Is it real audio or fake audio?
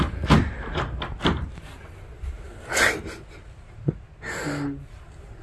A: real